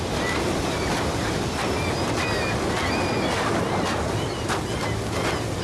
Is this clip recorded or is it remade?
recorded